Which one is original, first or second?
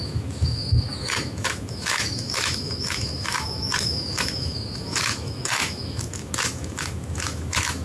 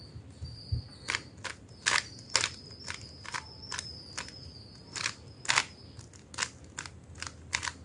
second